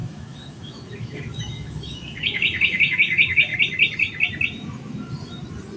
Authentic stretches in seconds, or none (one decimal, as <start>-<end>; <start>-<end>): 3.5-5.8